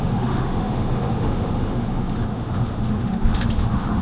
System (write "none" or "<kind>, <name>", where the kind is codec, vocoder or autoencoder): autoencoder, DAC-VAE